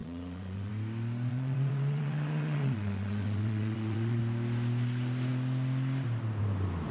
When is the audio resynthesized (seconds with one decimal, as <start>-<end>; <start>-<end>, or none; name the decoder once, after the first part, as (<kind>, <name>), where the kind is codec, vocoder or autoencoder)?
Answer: 0.0-0.7 (vocoder, WaveNeXt); 1.3-4.2